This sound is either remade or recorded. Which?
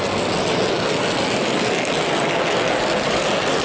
recorded